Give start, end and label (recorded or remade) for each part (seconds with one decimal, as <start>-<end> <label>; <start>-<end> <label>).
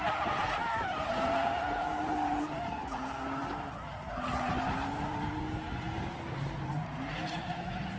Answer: 0.0-8.0 remade